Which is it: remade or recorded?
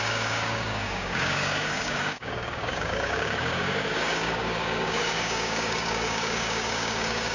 remade